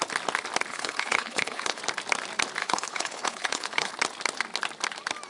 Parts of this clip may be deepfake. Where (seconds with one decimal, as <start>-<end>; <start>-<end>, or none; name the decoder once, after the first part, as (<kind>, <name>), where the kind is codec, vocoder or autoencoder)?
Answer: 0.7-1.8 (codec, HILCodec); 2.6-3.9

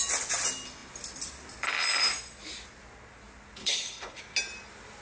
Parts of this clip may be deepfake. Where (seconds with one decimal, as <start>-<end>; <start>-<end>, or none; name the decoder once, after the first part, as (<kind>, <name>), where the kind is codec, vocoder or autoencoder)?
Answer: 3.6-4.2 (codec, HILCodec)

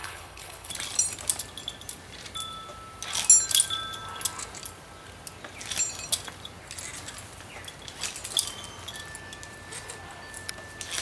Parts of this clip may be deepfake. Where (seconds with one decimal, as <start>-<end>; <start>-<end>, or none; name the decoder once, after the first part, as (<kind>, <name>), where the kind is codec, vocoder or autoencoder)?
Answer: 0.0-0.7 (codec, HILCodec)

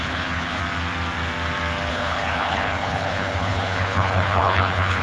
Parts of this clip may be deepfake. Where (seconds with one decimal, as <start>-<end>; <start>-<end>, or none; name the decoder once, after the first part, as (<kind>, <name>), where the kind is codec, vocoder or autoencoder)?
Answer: 0.0-0.6 (codec, HILCodec); 1.9-5.0